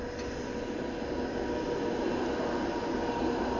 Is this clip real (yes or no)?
yes